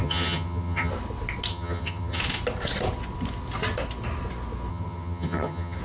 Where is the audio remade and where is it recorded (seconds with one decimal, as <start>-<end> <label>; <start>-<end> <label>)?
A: 0.0-0.9 remade; 0.9-1.5 recorded; 1.5-2.2 remade; 2.2-4.7 recorded; 4.7-5.8 remade